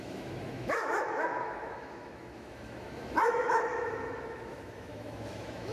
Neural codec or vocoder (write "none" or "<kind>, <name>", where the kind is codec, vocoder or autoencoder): autoencoder, DAC-VAE